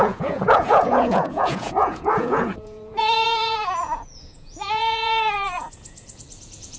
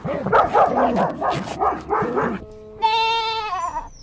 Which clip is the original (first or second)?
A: second